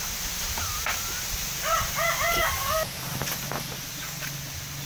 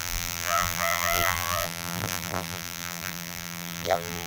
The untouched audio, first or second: first